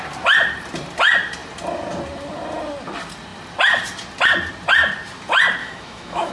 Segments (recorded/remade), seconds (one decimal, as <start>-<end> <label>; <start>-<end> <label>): 0.0-5.6 recorded; 5.6-6.3 remade